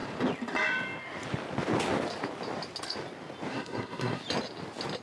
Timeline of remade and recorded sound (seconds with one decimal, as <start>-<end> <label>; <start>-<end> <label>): 0.0-3.5 recorded; 3.5-4.2 remade; 4.2-5.0 recorded